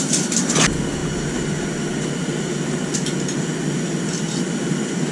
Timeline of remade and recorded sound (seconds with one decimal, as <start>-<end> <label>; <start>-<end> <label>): 0.0-5.1 recorded